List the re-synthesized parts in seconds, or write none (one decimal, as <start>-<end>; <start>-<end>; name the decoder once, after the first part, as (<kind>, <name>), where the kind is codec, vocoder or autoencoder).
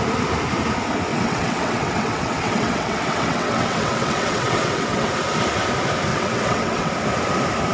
1.1-5.1 (vocoder, WaveNeXt); 6.1-6.9